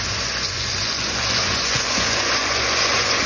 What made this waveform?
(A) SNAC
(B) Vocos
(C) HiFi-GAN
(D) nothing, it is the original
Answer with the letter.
B